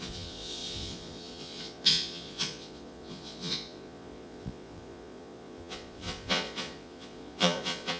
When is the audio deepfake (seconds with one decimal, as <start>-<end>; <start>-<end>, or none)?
0.0-8.0